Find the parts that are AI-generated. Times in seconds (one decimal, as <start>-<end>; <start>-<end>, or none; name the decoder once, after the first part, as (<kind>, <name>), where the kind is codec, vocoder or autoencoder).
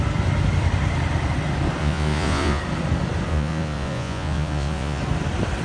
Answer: 1.8-2.6 (vocoder, Vocos); 3.3-5.0